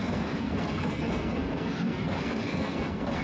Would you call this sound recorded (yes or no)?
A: no